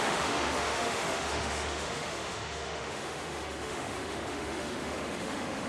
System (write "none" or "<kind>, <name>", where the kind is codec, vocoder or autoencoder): autoencoder, DAC-VAE